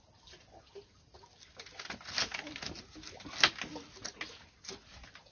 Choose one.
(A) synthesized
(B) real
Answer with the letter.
B